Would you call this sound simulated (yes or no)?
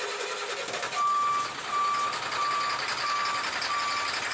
no